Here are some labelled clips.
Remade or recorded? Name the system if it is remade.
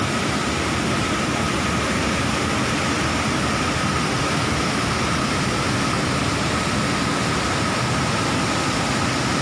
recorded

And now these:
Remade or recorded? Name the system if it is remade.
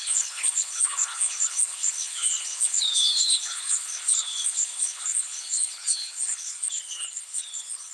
remade, codec, HILCodec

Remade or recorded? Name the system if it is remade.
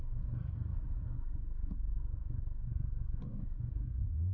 remade, codec, SNAC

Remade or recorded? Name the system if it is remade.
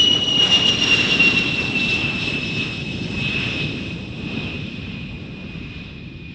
remade, vocoder, BigVGAN v2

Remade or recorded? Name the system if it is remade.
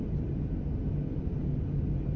recorded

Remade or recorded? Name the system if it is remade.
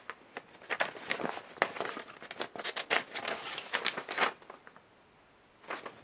recorded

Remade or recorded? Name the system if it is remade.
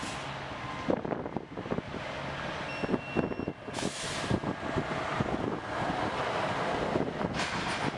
recorded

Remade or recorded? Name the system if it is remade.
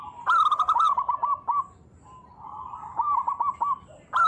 remade, vocoder, BigVGAN v2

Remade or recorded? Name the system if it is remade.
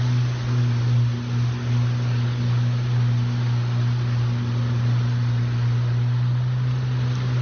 recorded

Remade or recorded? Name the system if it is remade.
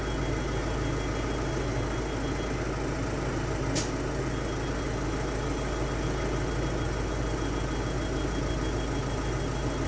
recorded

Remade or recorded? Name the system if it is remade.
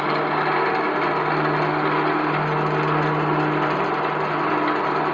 recorded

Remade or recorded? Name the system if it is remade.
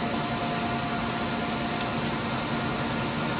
recorded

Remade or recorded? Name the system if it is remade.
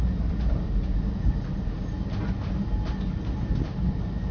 recorded